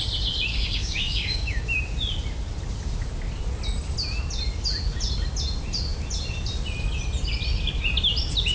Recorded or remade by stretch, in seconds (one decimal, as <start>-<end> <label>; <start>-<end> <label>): 0.0-0.5 recorded; 0.5-1.6 remade; 1.6-8.5 recorded